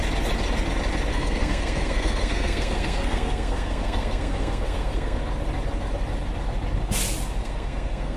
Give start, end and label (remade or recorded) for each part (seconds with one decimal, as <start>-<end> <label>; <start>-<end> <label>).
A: 0.0-1.1 recorded; 1.1-5.2 remade; 5.2-7.4 recorded; 7.4-8.2 remade